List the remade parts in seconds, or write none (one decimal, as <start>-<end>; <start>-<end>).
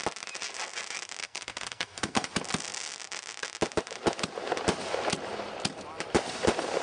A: 1.2-2.3